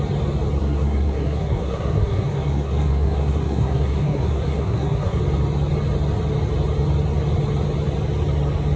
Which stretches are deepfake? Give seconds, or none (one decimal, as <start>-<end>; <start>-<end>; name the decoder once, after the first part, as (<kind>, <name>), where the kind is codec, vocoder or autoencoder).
0.6-5.2 (codec, SNAC)